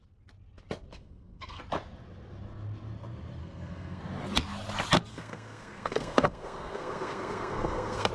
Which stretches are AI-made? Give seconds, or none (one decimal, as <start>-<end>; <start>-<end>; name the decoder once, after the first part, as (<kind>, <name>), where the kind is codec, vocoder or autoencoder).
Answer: 0.9-1.6 (codec, SNAC); 3.4-4.0; 5.1-8.1